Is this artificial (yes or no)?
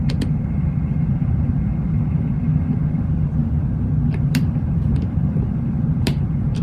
yes